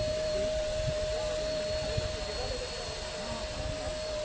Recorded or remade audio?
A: recorded